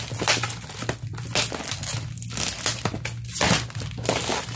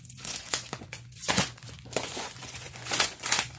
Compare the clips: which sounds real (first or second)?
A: first